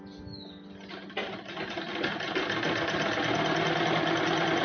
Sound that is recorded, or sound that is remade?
recorded